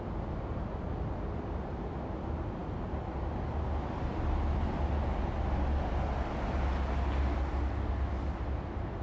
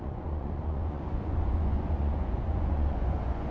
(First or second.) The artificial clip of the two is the second